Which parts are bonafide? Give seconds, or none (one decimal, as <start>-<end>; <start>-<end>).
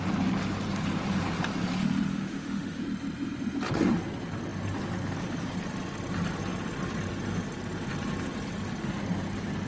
0.0-2.1; 2.8-9.7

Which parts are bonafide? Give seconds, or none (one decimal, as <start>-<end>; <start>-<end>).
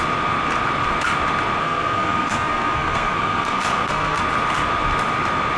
0.0-1.6; 4.2-5.6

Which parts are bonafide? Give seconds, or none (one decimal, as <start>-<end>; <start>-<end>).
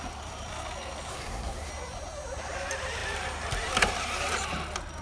0.0-1.1; 1.7-5.0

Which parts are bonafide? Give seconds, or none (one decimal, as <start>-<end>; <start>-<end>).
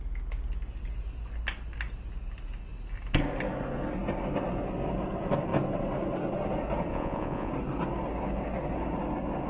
0.0-6.9; 7.5-9.5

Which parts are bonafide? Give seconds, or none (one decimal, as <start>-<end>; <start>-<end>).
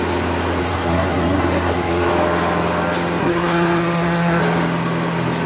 0.0-0.6; 2.1-3.2; 4.4-5.5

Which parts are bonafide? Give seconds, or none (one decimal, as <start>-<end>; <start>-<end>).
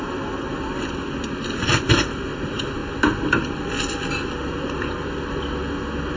0.0-6.2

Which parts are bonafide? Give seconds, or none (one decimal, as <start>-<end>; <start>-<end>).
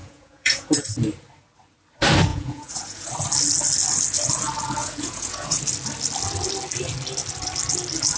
0.8-2.3; 3.1-4.8; 5.6-8.2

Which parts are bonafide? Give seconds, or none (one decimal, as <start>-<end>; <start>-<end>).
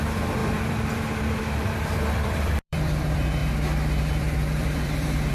3.4-4.1